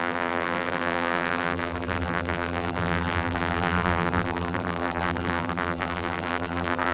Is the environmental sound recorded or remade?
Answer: remade